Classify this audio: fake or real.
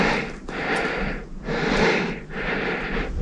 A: real